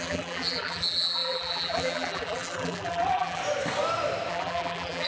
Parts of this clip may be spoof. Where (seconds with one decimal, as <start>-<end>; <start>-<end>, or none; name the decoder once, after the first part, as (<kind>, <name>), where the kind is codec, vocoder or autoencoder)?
0.0-3.4 (vocoder, BigVGAN v2); 4.3-5.1